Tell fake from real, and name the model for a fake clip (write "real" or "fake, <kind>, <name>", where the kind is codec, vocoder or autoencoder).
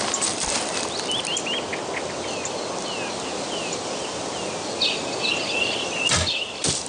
real